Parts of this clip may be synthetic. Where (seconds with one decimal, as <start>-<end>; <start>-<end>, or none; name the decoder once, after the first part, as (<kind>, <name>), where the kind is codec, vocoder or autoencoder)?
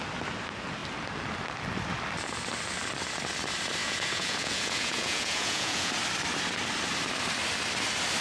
3.8-5.9 (vocoder, Vocos)